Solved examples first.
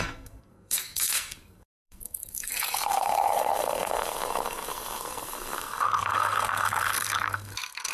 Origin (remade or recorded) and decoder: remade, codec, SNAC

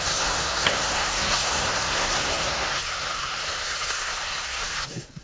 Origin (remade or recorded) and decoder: remade, codec, SNAC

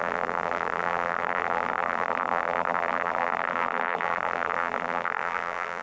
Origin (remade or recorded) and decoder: remade, vocoder, BigVGAN v2